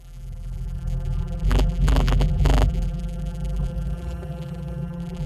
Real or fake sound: fake